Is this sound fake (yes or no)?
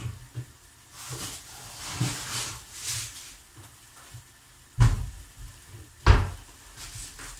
no